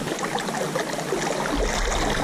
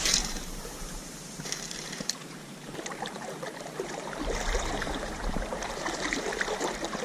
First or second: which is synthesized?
second